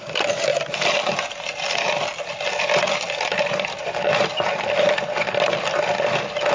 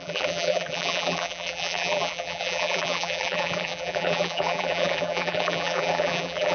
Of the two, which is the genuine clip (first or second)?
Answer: first